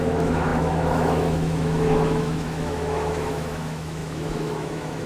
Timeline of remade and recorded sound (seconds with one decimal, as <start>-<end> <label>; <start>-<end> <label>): 0.0-5.1 remade